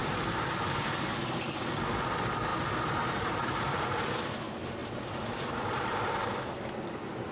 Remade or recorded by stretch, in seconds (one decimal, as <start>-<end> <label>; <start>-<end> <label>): 0.0-1.4 remade; 1.4-7.3 recorded